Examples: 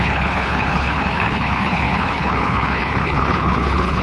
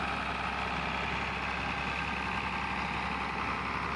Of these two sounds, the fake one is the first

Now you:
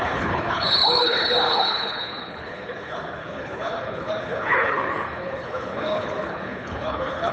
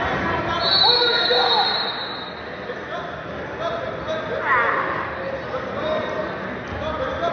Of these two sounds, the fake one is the first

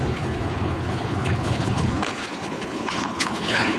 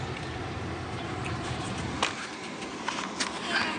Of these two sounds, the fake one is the first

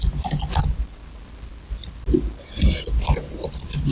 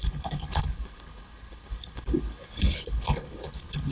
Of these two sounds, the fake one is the second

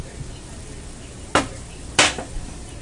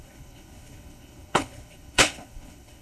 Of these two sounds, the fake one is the second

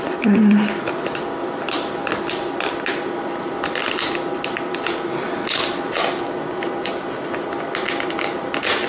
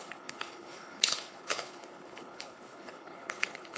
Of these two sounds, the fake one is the second